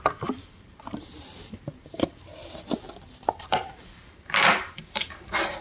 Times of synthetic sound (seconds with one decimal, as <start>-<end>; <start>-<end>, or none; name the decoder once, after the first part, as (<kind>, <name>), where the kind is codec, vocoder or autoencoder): 0.0-2.3 (vocoder, BigVGAN v2); 3.3-5.6